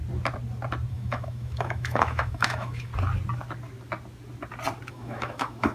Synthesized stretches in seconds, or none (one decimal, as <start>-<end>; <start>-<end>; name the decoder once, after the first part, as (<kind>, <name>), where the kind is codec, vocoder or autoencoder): 0.9-2.9 (autoencoder, DAC-VAE); 4.9-5.7